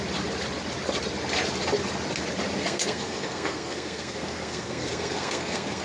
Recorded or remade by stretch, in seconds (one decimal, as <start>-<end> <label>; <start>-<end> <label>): 0.0-2.6 recorded; 2.6-5.8 remade